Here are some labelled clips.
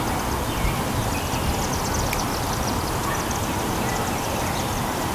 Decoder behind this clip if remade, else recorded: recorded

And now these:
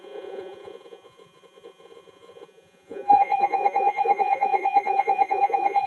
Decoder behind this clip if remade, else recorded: remade, vocoder, Vocos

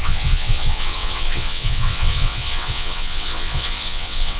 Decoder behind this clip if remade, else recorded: remade, vocoder, WaveNeXt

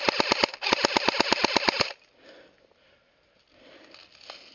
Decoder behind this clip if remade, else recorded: recorded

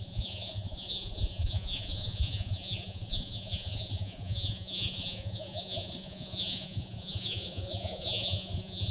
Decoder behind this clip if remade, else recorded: remade, vocoder, Vocos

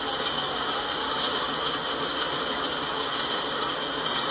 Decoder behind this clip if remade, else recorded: recorded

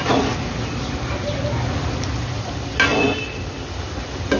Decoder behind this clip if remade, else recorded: recorded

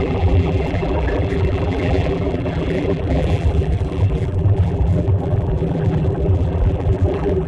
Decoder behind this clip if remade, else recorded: remade, vocoder, BigVGAN v2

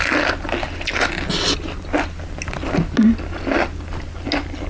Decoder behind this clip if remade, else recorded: recorded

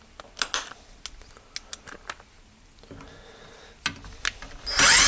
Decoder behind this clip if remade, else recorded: recorded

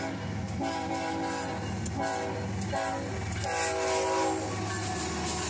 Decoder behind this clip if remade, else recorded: recorded